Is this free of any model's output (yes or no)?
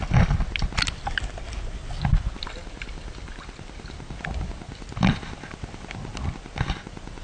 yes